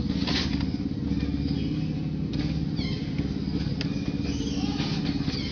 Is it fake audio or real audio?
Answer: real